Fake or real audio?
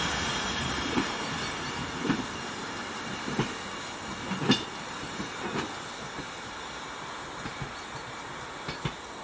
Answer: real